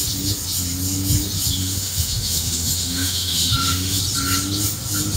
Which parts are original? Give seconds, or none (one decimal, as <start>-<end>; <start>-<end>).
0.0-1.6; 4.0-5.2